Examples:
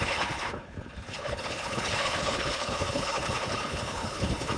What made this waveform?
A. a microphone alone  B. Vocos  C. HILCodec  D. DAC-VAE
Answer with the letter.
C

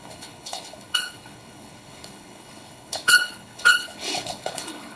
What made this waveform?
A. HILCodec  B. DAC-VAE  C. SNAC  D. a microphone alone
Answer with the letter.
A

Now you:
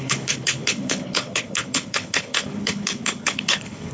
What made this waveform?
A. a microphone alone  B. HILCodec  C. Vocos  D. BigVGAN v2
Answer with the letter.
B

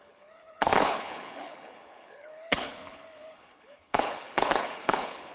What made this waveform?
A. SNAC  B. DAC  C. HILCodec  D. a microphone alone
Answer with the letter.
C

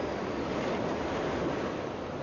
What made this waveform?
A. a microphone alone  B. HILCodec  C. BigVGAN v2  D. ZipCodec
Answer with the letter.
A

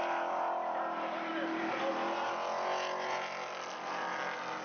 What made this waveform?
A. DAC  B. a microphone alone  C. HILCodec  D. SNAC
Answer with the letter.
B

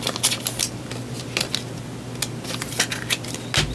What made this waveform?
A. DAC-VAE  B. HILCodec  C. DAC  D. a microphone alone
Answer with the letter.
D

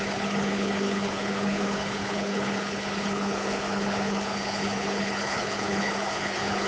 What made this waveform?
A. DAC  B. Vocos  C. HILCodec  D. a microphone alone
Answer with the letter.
C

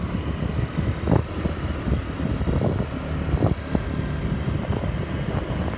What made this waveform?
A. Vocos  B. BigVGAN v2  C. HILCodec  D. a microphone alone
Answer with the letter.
D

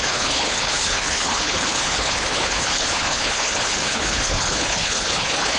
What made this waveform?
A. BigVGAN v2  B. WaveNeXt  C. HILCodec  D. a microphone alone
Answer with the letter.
C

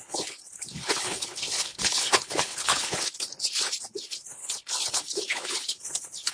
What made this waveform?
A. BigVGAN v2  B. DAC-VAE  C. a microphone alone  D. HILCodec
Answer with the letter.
D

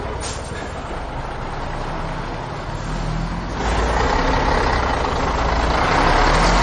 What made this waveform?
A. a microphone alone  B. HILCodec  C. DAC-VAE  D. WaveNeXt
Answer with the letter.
A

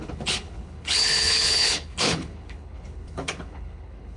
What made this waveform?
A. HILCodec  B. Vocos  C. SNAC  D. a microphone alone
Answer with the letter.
A